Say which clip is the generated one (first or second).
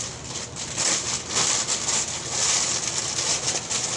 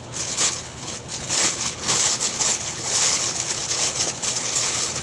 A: second